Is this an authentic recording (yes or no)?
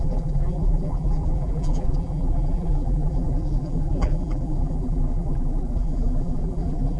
no